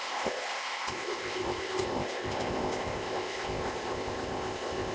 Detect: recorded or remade remade